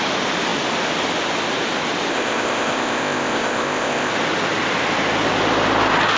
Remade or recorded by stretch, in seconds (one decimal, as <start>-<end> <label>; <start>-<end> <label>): 0.0-2.1 recorded; 2.1-4.1 remade; 4.1-6.2 recorded